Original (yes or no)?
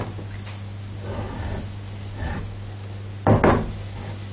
yes